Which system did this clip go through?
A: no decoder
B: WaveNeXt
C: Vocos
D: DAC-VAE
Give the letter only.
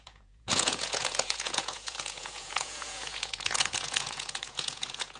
C